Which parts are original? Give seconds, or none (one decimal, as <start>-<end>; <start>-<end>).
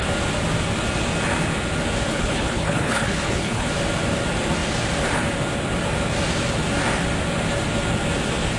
0.0-2.1; 3.7-8.6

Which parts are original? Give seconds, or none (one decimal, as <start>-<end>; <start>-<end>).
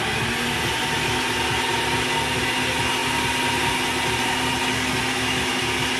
0.0-5.0; 5.6-6.0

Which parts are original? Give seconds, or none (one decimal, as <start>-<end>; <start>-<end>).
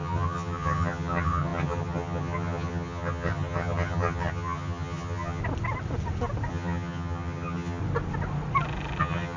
5.4-6.5; 7.8-9.0